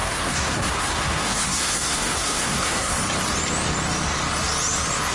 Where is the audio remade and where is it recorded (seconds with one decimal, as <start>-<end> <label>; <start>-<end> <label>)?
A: 0.0-3.0 remade; 3.0-5.1 recorded